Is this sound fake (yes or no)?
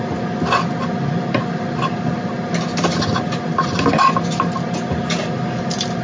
no